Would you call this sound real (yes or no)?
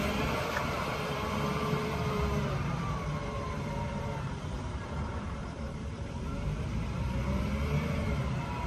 no